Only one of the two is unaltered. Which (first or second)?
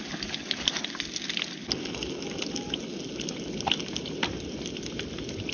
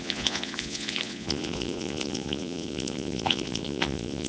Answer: first